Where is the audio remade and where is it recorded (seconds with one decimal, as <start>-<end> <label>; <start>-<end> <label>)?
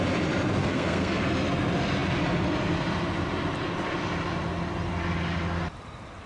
0.0-0.6 recorded; 0.6-1.2 remade; 1.2-6.3 recorded